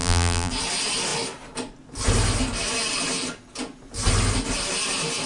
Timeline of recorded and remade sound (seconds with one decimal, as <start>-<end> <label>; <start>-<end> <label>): 0.0-0.5 remade; 0.5-5.3 recorded